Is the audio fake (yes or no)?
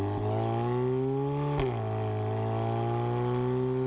no